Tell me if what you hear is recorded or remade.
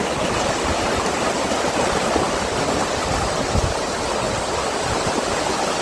recorded